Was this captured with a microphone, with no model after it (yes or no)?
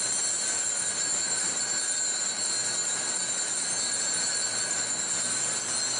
yes